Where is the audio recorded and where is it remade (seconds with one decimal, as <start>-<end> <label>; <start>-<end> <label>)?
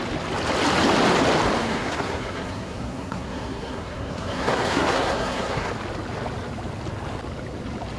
0.0-1.6 recorded; 1.6-5.7 remade; 5.7-8.0 recorded